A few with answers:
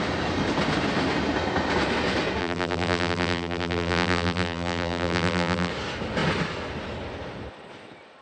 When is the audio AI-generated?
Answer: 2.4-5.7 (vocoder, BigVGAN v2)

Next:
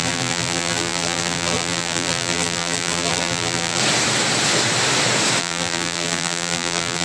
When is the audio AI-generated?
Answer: 0.0-3.8 (vocoder, BigVGAN v2); 5.4-7.0

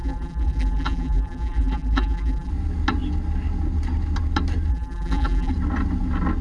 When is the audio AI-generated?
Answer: 0.0-2.5 (vocoder, BigVGAN v2); 4.7-5.5

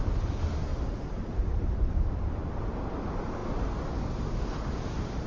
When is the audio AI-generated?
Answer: 0.7-3.0 (vocoder, BigVGAN v2)

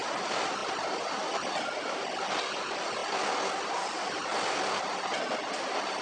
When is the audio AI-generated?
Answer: none

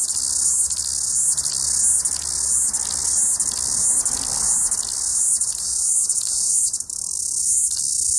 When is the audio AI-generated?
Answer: 5.1-6.6 (vocoder, BigVGAN v2)